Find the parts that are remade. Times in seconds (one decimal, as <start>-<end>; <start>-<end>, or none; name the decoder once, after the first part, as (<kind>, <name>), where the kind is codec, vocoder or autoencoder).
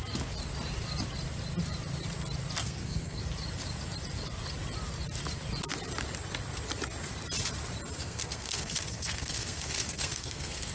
2.6-3.2 (codec, SNAC); 8.0-10.7